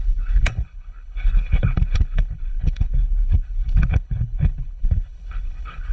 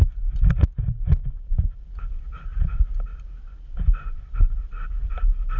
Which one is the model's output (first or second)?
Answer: first